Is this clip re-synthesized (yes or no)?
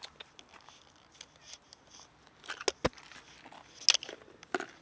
no